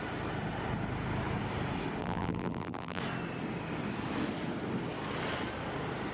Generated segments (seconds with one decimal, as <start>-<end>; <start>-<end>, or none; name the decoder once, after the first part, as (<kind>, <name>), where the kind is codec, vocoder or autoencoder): 2.0-3.0 (vocoder, BigVGAN v2)